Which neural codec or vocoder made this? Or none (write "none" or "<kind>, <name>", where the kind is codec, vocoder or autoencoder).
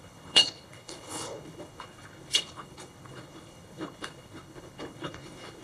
codec, HILCodec